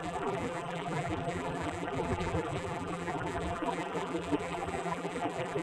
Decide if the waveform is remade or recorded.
remade